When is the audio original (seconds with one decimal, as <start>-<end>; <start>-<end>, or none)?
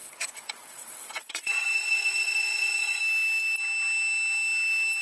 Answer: 3.0-5.0